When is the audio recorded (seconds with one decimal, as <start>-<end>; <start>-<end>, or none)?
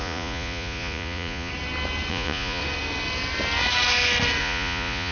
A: 1.5-2.1; 2.6-4.4